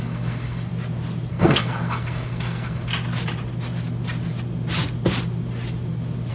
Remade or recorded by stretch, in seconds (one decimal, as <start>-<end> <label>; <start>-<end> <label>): 0.0-0.7 remade; 0.7-1.3 recorded; 1.3-2.9 remade; 2.9-6.3 recorded